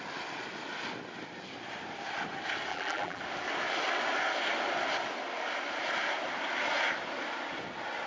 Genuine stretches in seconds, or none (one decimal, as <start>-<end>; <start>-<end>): 0.0-2.7; 3.2-8.1